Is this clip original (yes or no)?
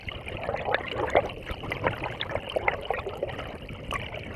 yes